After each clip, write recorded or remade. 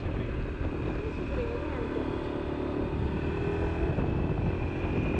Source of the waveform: recorded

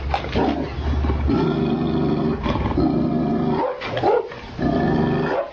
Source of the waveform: recorded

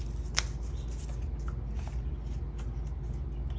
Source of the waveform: recorded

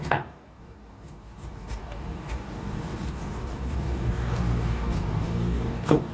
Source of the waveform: remade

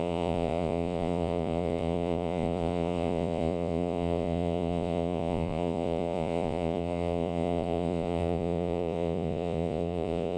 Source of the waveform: remade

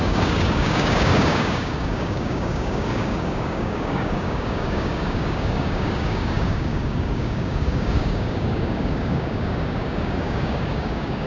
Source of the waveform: remade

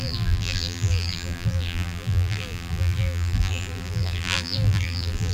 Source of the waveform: remade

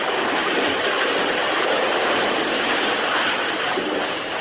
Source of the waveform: remade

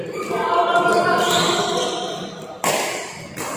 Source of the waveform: recorded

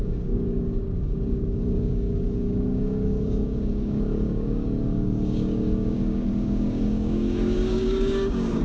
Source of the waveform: remade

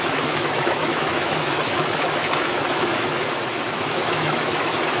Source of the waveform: remade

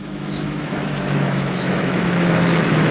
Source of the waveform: remade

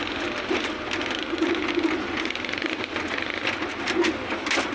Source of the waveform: recorded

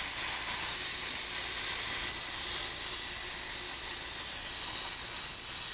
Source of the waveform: recorded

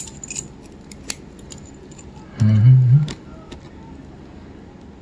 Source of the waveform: recorded